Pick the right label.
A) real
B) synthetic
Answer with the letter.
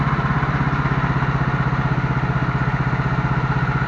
A